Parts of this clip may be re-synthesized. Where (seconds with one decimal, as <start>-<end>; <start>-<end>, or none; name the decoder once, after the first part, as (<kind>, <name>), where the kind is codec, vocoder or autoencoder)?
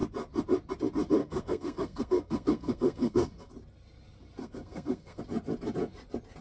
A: 1.2-3.5 (codec, SNAC); 4.4-5.2